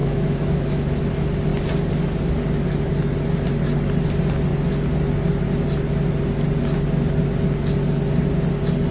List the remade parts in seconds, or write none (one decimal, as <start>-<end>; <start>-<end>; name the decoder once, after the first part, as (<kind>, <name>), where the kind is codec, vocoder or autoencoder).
0.0-1.0 (autoencoder, DAC-VAE)

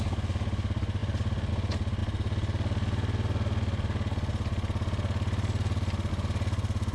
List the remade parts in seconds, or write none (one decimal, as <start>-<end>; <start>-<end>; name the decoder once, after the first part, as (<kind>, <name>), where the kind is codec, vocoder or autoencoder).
none

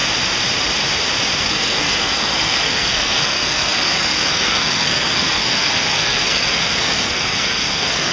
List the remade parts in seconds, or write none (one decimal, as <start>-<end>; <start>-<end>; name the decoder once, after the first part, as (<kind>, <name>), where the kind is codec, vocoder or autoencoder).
1.4-8.1 (codec, SNAC)

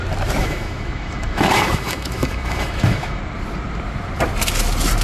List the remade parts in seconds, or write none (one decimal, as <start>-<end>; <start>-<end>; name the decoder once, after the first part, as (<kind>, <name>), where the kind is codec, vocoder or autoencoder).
0.4-3.2 (autoencoder, DAC-VAE)